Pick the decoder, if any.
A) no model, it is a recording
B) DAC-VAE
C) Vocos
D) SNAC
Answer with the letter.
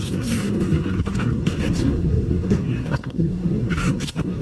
D